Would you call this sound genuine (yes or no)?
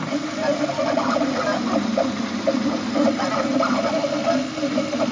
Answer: yes